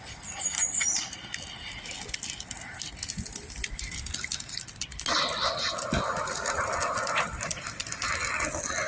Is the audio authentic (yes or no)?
yes